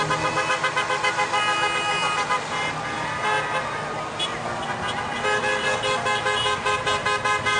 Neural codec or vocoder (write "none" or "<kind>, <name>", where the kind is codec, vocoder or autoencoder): none